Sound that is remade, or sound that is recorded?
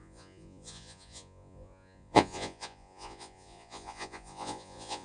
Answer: remade